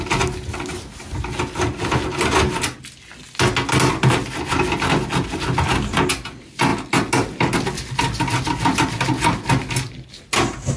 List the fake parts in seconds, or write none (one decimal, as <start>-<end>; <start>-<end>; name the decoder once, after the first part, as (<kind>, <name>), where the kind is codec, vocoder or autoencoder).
none